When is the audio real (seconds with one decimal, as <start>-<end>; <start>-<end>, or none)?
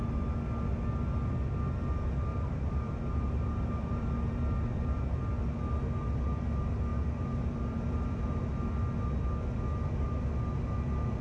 0.0-2.3; 5.2-6.9; 8.5-11.2